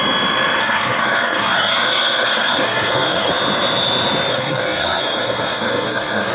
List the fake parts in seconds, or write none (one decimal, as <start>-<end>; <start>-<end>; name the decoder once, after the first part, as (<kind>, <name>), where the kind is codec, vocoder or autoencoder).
0.6-3.3 (codec, SNAC); 4.3-6.3